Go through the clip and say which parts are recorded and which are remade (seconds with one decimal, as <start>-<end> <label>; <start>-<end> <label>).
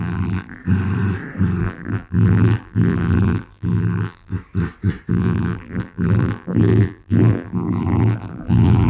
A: 0.0-0.6 remade; 0.6-1.6 recorded; 1.6-4.3 remade; 4.3-5.1 recorded; 5.1-8.9 remade